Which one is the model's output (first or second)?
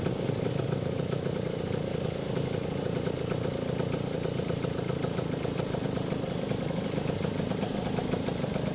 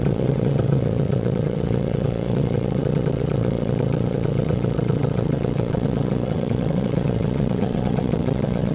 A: second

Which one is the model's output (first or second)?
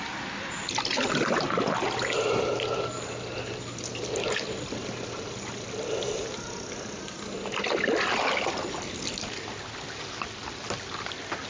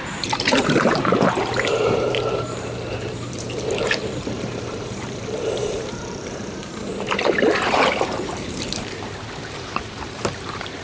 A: second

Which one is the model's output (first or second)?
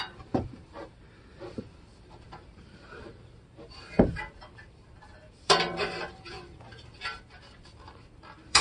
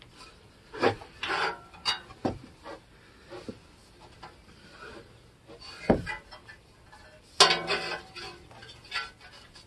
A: first